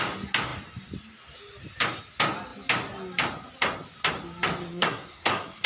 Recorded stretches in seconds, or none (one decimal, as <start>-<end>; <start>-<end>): 0.0-4.7

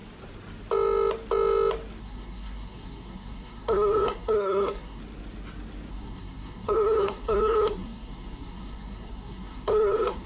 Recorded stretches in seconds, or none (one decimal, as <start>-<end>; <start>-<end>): 0.0-2.0; 5.0-5.9